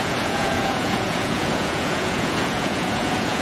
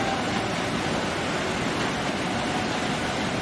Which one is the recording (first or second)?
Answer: second